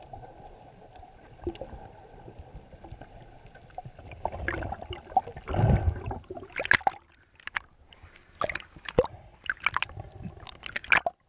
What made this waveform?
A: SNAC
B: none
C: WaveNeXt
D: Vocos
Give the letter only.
B